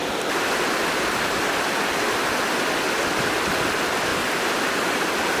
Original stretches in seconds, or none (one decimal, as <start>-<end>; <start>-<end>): 0.0-4.1; 5.0-5.4